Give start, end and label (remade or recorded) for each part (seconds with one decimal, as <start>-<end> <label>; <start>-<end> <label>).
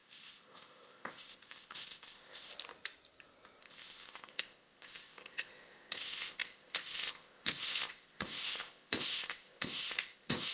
0.0-2.5 remade; 2.5-3.6 recorded; 3.6-10.5 remade